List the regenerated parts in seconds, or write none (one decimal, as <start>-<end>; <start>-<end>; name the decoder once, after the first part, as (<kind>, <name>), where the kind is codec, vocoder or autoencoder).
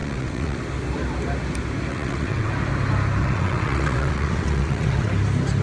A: 0.0-0.6 (vocoder, WaveNeXt); 1.9-2.5; 3.2-5.1